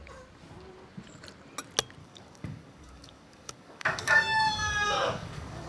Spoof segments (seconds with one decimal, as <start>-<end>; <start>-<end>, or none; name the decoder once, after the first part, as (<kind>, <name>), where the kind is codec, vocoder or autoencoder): 2.0-5.7 (codec, DAC)